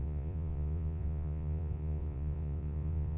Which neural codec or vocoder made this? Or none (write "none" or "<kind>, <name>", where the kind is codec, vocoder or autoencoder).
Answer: vocoder, Vocos